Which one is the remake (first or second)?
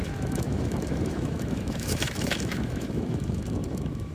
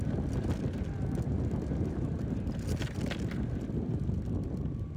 first